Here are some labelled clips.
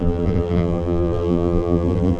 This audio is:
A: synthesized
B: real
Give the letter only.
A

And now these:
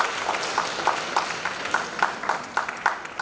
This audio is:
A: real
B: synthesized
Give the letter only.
A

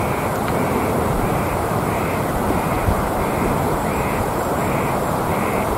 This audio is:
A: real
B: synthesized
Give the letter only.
B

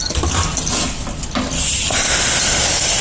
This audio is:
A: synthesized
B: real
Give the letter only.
B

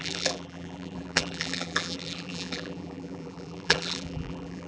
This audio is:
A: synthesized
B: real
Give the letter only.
A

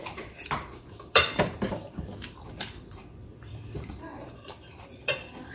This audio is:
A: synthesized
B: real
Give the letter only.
A